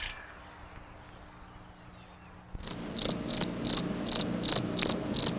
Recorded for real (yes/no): yes